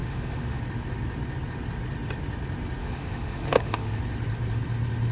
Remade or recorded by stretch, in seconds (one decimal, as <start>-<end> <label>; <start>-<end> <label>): 0.0-0.6 remade; 0.6-2.8 recorded; 2.8-4.0 remade; 4.0-5.1 recorded